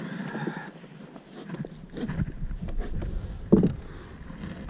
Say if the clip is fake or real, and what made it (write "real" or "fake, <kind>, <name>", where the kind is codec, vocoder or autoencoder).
real